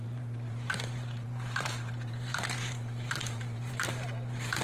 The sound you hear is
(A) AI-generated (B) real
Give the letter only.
A